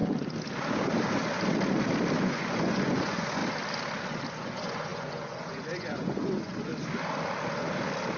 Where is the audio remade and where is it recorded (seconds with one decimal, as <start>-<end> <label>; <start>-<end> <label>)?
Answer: 0.0-2.2 recorded; 2.2-3.4 remade; 3.4-4.3 recorded; 4.3-6.7 remade; 6.7-8.2 recorded